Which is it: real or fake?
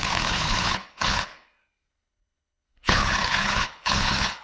fake